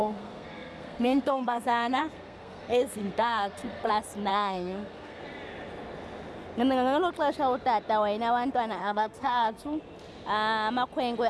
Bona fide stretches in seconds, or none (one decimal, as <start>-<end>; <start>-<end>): 3.9-4.3; 5.2-8.8; 9.8-11.3